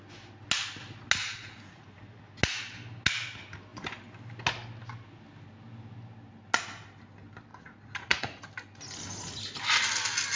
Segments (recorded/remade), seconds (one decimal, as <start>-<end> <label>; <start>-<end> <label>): 0.0-1.2 recorded; 1.2-2.0 remade; 2.0-7.5 recorded; 7.5-8.4 remade; 8.4-10.4 recorded